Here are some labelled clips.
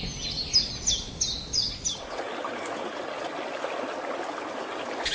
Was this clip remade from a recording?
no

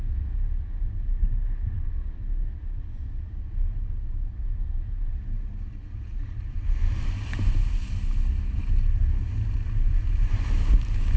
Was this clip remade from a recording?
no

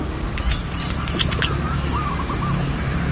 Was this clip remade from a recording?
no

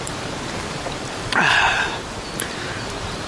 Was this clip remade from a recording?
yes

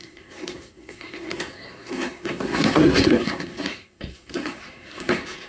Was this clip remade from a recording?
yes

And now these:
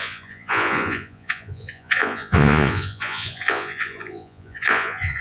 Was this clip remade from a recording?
yes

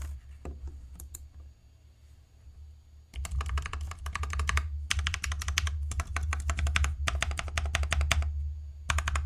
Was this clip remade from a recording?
no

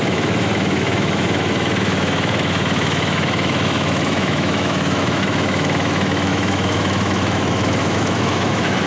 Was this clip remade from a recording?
yes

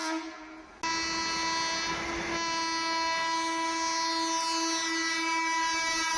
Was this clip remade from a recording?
no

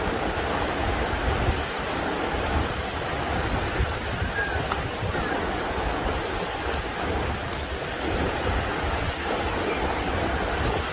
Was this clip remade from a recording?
no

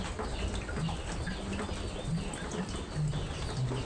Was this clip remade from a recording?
no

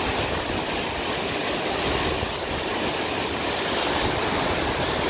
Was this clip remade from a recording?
no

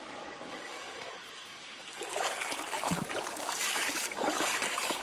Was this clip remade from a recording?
yes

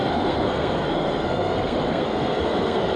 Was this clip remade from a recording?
yes